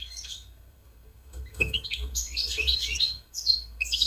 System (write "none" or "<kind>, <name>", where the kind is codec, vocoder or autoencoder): codec, SNAC